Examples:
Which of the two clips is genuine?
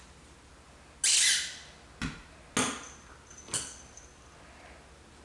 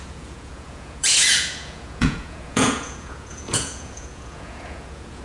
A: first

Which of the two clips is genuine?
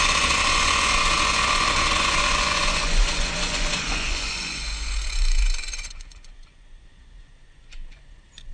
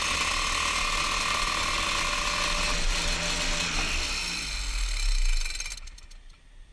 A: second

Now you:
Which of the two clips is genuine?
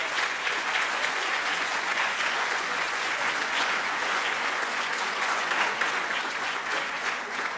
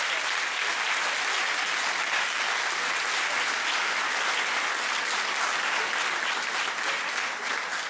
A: second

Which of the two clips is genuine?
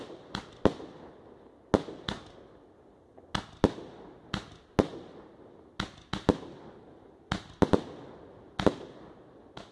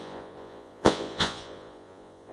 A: first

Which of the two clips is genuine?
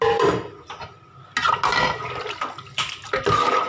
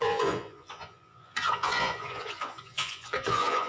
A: first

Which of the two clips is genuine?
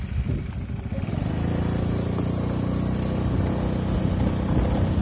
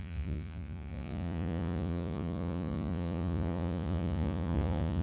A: first